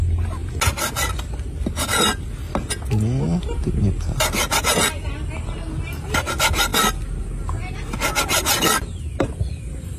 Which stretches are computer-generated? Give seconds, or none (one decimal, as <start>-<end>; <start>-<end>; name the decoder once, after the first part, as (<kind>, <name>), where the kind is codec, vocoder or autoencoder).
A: none